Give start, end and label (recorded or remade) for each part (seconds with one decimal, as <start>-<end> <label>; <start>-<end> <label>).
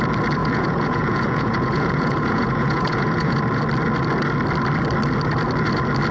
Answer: 0.0-0.4 recorded; 0.4-3.4 remade; 3.4-6.1 recorded